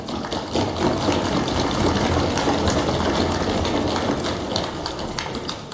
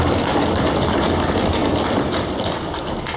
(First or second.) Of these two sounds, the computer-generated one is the second